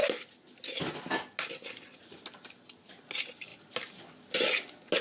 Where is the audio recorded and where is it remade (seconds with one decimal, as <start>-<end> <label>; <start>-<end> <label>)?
0.0-5.0 recorded